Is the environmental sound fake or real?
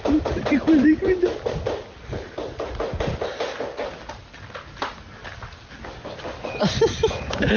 real